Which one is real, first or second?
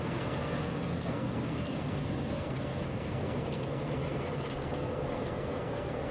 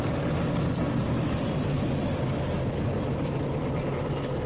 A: second